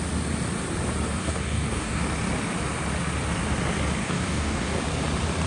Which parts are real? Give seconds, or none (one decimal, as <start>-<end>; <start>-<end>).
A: 0.0-1.2; 2.0-4.0; 4.8-5.5